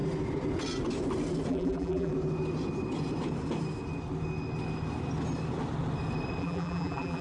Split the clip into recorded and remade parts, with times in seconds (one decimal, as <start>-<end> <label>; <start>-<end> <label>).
0.0-1.5 recorded; 1.5-2.1 remade; 2.1-6.4 recorded; 6.4-7.2 remade